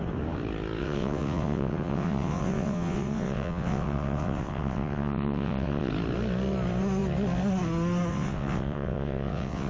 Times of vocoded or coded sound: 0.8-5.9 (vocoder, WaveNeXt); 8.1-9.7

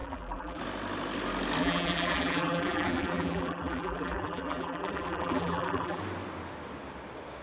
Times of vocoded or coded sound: 0.0-0.6 (vocoder, BigVGAN v2); 1.6-6.0

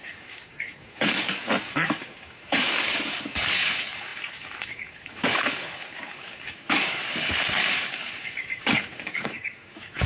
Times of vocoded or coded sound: 0.0-10.1 (codec, DAC)

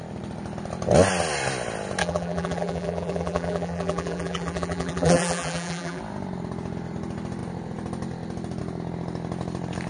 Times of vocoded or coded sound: 2.0-6.0 (vocoder, BigVGAN v2)

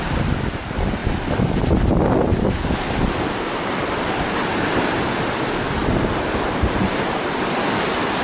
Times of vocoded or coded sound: 0.0-1.0 (vocoder, BigVGAN v2); 2.9-8.2

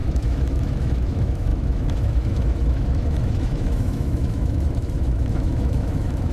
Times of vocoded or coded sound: 0.0-6.3 (autoencoder, DAC-VAE)